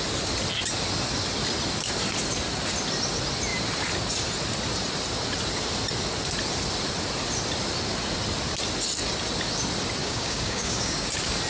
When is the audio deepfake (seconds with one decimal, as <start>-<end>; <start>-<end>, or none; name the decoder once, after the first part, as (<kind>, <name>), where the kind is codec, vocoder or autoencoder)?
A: 10.0-11.1 (codec, DAC)

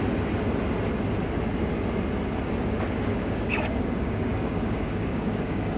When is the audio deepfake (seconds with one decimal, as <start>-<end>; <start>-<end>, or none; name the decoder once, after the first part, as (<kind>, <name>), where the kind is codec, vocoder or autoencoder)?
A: 3.1-5.8 (codec, DAC)

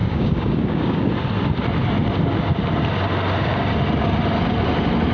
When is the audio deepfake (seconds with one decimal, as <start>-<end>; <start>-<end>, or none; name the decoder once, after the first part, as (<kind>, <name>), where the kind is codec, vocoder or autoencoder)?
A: 0.0-1.1 (codec, DAC)

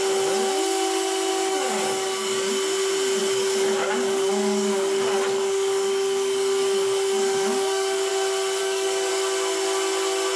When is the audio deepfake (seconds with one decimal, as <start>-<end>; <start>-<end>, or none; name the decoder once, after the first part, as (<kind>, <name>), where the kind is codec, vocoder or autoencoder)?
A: 1.3-2.5 (codec, DAC); 3.2-8.1; 8.6-9.1

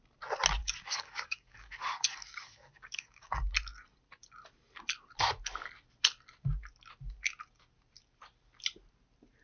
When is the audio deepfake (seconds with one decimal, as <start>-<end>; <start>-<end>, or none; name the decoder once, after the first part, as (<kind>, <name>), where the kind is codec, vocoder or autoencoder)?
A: 0.6-3.5 (codec, DAC)

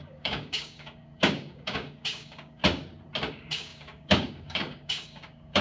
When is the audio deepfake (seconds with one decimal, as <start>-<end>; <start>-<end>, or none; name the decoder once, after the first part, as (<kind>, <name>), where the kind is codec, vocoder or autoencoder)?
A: 0.0-2.6 (codec, DAC); 3.3-5.6